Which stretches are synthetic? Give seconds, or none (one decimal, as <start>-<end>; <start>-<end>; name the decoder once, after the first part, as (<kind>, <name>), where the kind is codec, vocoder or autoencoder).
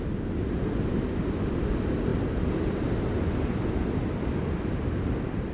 none